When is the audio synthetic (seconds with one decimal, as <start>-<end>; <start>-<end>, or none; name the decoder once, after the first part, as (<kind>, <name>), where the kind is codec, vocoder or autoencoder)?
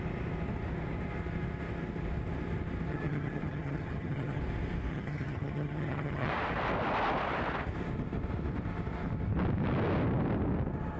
2.9-4.4 (vocoder, HiFi-GAN); 4.9-6.3